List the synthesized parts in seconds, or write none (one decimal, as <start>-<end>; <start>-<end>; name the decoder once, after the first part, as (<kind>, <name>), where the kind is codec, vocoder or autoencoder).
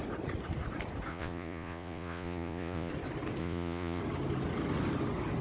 1.1-2.9 (vocoder, Vocos); 3.4-4.0